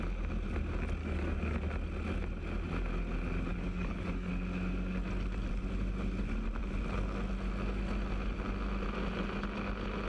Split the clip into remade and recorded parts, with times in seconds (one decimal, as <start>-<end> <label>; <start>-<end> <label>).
0.0-1.0 recorded; 1.0-1.7 remade; 1.7-3.5 recorded; 3.5-4.3 remade; 4.3-10.1 recorded

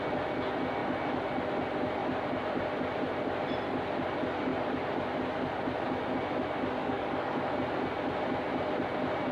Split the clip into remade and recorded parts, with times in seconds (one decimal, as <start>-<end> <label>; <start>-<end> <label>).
0.0-6.8 recorded; 6.8-7.5 remade; 7.5-9.3 recorded

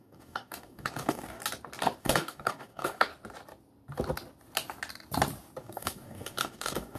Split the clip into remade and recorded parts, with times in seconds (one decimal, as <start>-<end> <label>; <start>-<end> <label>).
0.0-1.4 remade; 1.4-2.0 recorded; 2.0-3.1 remade; 3.1-5.6 recorded; 5.6-7.0 remade

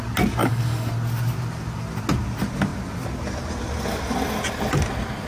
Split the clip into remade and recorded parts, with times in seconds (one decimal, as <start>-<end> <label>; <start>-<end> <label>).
0.0-0.4 recorded; 0.4-0.9 remade; 0.9-5.3 recorded

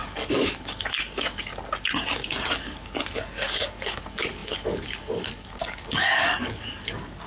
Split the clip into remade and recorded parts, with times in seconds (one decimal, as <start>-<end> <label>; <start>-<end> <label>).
0.0-1.5 remade; 1.5-2.4 recorded; 2.4-7.3 remade

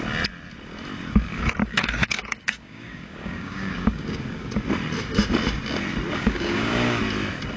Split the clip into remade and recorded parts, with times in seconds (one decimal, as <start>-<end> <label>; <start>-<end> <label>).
0.0-1.6 recorded; 1.6-4.5 remade; 4.5-6.1 recorded; 6.1-7.0 remade; 7.0-7.6 recorded

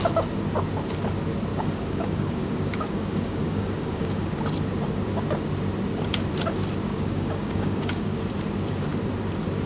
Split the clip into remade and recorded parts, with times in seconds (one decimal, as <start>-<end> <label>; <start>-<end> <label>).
0.0-1.5 recorded; 1.5-4.3 remade; 4.3-6.9 recorded; 6.9-8.2 remade; 8.2-9.7 recorded

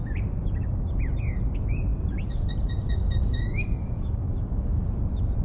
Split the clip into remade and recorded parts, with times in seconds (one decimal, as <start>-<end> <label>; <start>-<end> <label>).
0.0-1.9 recorded; 1.9-4.8 remade; 4.8-5.4 recorded